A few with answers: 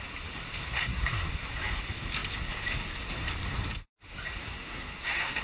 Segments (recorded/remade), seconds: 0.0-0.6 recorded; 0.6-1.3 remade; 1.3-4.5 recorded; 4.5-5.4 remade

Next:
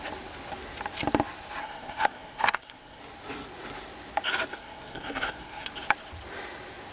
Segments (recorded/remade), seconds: 0.0-1.6 recorded; 1.6-3.0 remade; 3.0-4.5 recorded; 4.5-5.7 remade; 5.7-6.9 recorded

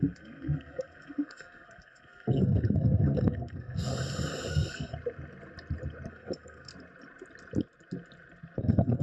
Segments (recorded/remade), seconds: 0.0-3.9 remade; 3.9-4.5 recorded; 4.5-4.9 remade; 4.9-6.1 recorded; 6.1-6.7 remade; 6.7-8.6 recorded; 8.6-9.0 remade

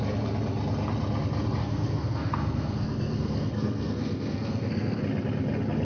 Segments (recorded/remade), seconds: 0.0-1.6 recorded; 1.6-5.0 remade; 5.0-5.8 recorded

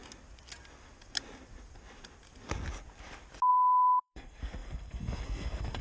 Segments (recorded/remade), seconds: 0.0-3.5 recorded; 3.5-5.8 remade